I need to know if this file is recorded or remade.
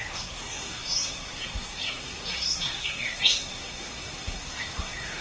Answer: remade